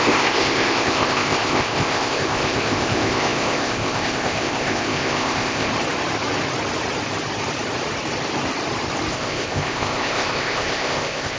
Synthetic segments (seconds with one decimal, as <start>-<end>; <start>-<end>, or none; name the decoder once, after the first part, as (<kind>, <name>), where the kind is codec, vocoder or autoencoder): 0.0-5.7 (codec, ZipCodec); 9.1-11.4